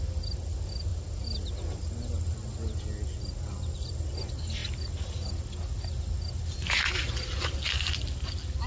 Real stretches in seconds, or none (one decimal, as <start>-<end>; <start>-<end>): 0.0-8.7